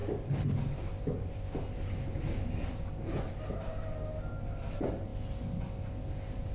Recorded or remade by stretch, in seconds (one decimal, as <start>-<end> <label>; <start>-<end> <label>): 0.0-6.5 recorded